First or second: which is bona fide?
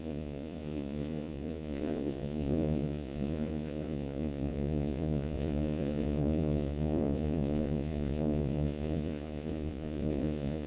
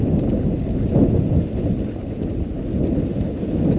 second